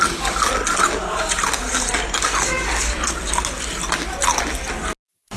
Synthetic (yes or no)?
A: no